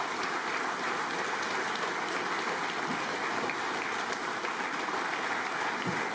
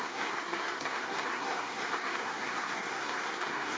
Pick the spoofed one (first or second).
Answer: second